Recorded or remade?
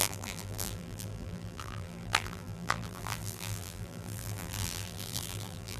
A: remade